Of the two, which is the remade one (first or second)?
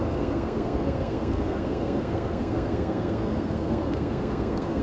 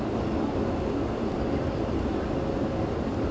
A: first